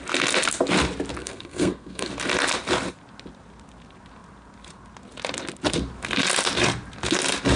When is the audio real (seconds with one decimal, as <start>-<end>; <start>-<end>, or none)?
0.0-1.2; 2.1-7.6